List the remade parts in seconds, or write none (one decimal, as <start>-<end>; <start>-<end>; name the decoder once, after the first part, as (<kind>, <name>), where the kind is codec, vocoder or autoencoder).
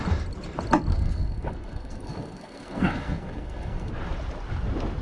0.9-3.9 (codec, SNAC)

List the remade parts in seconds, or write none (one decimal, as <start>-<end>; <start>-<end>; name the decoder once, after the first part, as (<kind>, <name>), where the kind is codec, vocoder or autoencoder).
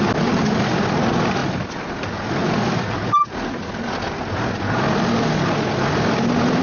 none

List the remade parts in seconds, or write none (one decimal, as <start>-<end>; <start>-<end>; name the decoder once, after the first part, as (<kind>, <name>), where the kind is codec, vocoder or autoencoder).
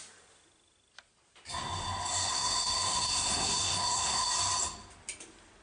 2.1-4.3 (codec, SNAC)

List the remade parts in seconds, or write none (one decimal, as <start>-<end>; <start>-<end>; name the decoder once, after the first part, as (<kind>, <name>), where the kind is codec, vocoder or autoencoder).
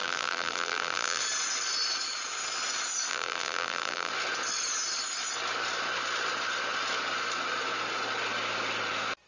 0.0-1.2 (vocoder, BigVGAN v2); 3.1-4.1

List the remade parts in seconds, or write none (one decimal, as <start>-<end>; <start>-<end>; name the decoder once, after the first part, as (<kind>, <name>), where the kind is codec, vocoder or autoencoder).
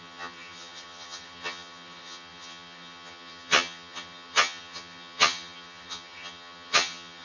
0.0-7.2 (vocoder, HiFi-GAN)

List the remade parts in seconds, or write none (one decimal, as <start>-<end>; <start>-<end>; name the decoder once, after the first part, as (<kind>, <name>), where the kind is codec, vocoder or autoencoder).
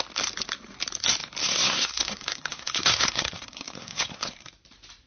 1.4-4.5 (codec, SNAC)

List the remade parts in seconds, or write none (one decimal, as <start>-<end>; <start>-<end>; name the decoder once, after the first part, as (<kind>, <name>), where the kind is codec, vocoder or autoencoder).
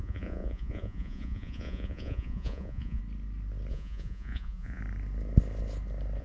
0.0-3.0 (vocoder, Vocos); 3.7-4.8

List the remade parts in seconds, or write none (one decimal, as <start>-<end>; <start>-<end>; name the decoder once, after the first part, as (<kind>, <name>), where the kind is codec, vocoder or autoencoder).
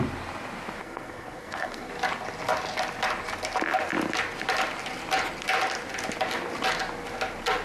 0.8-1.9 (codec, SNAC)